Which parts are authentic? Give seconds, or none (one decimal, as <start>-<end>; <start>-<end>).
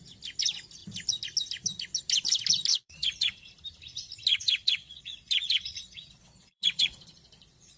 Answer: 0.0-2.7; 3.5-4.3